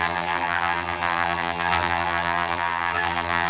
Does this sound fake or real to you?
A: fake